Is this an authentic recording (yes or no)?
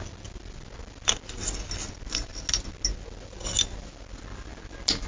yes